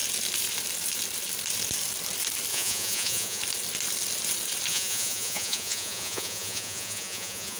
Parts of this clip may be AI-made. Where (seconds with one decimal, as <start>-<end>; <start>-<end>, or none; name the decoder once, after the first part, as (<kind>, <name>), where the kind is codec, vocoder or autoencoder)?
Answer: 2.5-3.4 (vocoder, Vocos); 4.7-7.6